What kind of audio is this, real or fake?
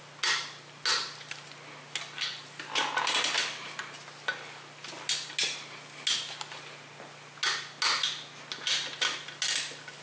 real